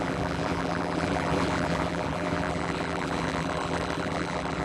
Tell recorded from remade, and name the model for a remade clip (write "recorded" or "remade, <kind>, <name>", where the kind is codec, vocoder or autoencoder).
remade, vocoder, BigVGAN v2